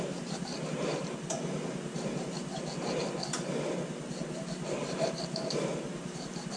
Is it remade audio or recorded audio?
recorded